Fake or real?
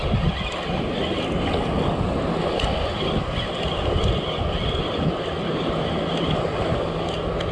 real